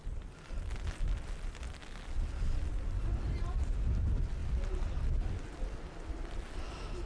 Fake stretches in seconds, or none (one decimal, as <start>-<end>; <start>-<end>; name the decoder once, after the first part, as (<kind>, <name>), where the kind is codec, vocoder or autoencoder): none